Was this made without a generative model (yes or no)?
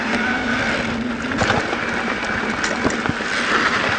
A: yes